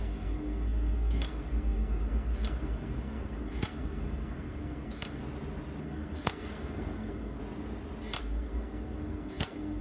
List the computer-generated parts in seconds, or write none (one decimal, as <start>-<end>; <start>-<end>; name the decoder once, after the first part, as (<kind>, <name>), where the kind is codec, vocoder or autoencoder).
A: 0.0-5.2 (codec, SNAC); 5.8-7.4; 8.2-9.8